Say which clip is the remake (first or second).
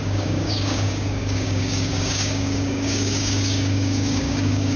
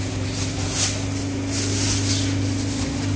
first